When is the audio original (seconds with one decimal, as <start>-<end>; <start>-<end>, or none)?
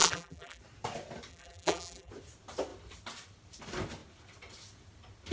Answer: 0.6-1.3; 2.1-5.3